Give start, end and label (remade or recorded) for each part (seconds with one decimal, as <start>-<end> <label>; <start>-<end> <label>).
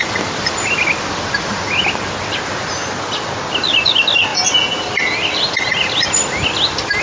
0.0-7.0 recorded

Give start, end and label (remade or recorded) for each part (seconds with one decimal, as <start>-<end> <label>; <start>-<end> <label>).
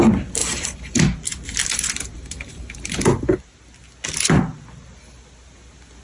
0.0-0.4 recorded; 0.4-1.0 remade; 1.0-1.6 recorded; 1.6-3.0 remade; 3.0-6.0 recorded